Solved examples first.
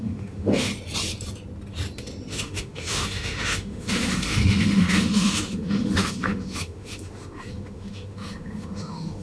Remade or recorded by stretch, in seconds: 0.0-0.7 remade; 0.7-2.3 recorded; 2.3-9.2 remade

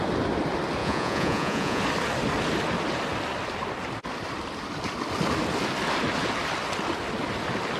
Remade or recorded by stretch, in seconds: 0.0-0.8 recorded; 0.8-1.8 remade; 1.8-7.8 recorded

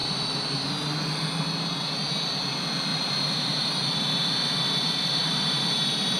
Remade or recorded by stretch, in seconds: 0.0-0.7 remade; 0.7-2.9 recorded; 2.9-3.8 remade; 3.8-5.2 recorded; 5.2-6.2 remade

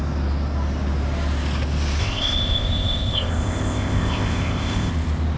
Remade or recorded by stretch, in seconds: 0.0-2.0 recorded; 2.0-4.9 remade; 4.9-5.4 recorded

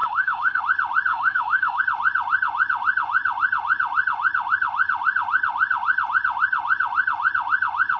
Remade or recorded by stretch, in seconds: 0.0-0.6 remade; 0.6-1.1 recorded; 1.1-1.8 remade; 1.8-8.0 recorded

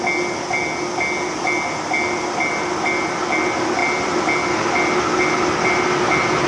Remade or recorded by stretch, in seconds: 0.0-6.5 recorded

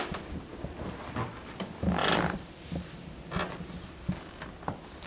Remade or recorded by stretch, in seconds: 0.0-5.1 recorded